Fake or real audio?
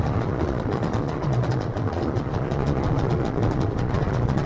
fake